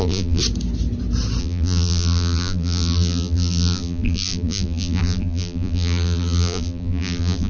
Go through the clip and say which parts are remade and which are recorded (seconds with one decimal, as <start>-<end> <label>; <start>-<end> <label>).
0.0-0.4 remade; 0.4-1.4 recorded; 1.4-7.5 remade